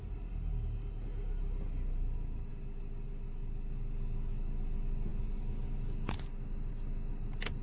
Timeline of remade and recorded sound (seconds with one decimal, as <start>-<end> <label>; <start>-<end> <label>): 0.0-7.6 recorded